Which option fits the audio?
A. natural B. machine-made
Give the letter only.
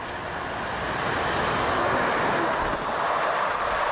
A